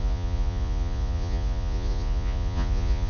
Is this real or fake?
fake